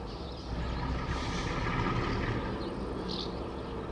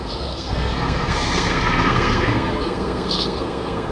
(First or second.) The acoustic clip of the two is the first